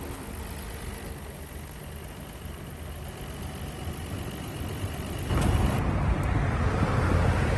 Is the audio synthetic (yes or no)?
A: no